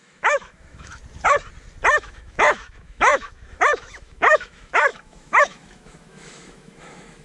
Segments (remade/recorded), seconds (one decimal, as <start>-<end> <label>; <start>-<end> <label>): 0.0-1.0 remade; 1.0-2.0 recorded; 2.0-7.2 remade